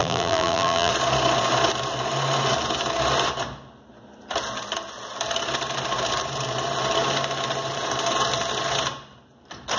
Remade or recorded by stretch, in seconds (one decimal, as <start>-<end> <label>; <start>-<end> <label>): 0.0-0.9 remade; 0.9-9.8 recorded